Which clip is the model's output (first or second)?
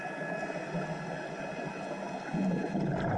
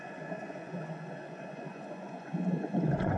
second